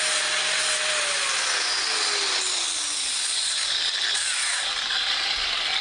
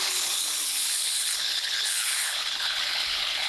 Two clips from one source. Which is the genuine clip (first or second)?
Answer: first